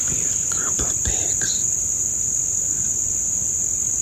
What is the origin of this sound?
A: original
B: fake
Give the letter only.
B